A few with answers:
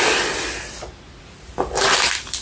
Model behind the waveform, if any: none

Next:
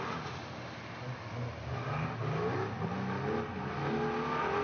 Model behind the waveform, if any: none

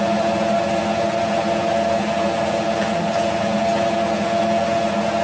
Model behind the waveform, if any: none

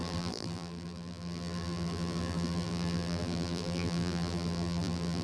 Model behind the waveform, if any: vocoder, BigVGAN v2